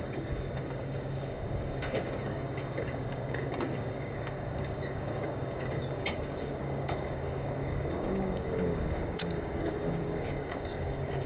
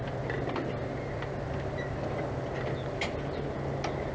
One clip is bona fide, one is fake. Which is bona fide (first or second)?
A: second